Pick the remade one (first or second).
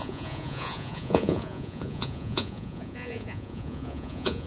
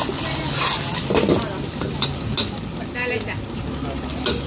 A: first